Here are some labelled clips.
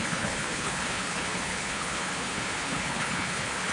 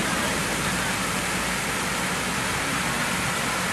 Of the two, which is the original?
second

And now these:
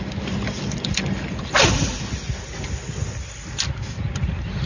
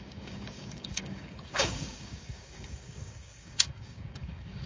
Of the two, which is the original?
first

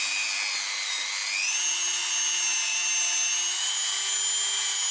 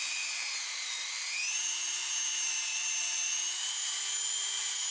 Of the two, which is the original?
first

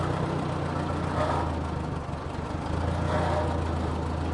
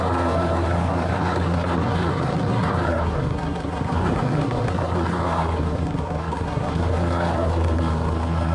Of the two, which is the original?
first